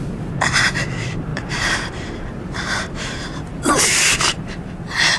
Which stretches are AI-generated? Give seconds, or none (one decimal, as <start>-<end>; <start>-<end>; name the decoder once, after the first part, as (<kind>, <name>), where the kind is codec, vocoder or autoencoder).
1.3-4.4 (vocoder, BigVGAN v2)